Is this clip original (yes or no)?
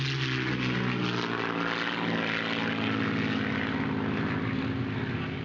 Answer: yes